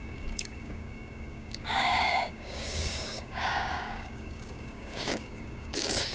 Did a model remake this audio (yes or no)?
yes